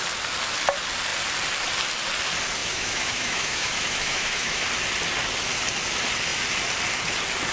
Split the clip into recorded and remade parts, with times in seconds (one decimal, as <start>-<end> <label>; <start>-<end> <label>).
0.0-2.6 recorded; 2.6-4.6 remade; 4.6-7.5 recorded